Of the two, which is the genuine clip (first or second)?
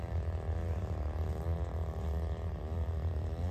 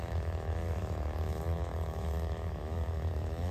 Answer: first